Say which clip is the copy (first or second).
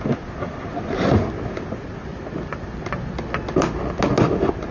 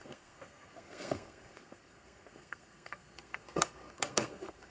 second